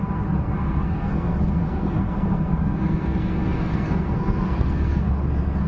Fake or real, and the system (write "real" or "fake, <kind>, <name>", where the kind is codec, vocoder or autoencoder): fake, codec, SNAC